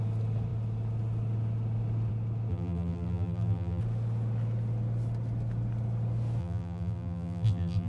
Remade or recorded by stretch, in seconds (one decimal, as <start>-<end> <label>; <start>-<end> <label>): 0.0-2.5 recorded; 2.5-3.8 remade; 3.8-6.4 recorded; 6.4-7.9 remade